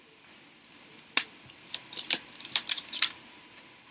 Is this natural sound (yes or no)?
no